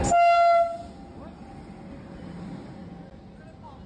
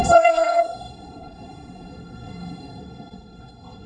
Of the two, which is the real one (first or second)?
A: first